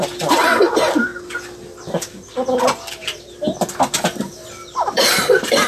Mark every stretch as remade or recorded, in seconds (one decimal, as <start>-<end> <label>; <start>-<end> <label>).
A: 0.0-1.1 remade; 1.1-4.5 recorded; 4.5-5.7 remade